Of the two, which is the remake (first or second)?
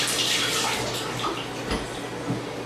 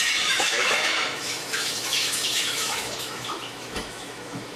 second